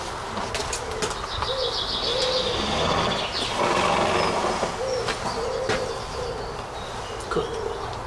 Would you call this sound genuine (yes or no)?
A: yes